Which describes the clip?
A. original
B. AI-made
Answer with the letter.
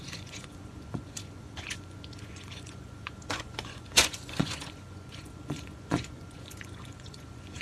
B